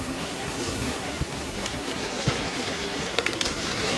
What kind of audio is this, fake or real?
fake